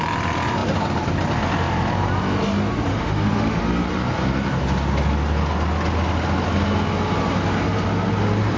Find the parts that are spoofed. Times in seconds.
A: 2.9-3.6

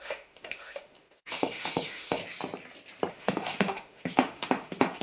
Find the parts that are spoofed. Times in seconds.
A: 0.0-2.2; 3.1-5.0